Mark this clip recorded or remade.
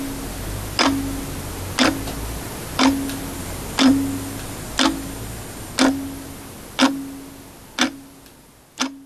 recorded